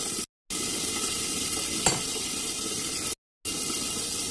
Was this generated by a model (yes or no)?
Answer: no